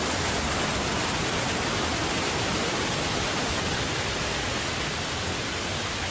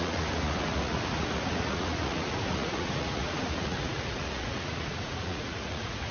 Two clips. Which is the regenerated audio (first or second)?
second